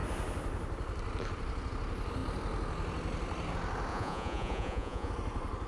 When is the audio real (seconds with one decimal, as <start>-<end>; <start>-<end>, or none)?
0.0-3.9; 5.1-5.7

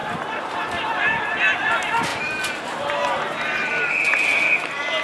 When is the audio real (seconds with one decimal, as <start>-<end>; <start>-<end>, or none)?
0.0-5.0

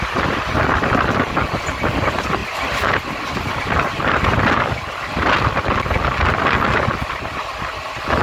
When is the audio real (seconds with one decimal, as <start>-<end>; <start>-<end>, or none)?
0.0-8.2

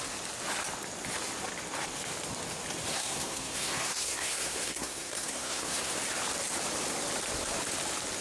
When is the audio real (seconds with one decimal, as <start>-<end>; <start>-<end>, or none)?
0.0-2.9; 5.9-8.2

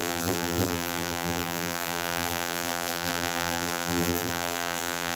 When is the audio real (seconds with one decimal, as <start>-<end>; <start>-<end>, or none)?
none

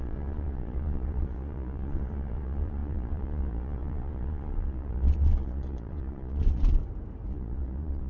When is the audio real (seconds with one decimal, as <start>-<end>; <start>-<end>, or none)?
6.8-7.3